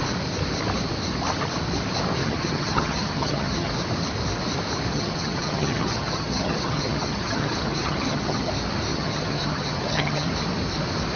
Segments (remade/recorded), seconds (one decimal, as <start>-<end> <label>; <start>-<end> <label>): 0.0-2.2 recorded; 2.2-3.7 remade; 3.7-4.9 recorded; 4.9-8.5 remade; 8.5-8.9 recorded; 8.9-10.3 remade; 10.3-11.2 recorded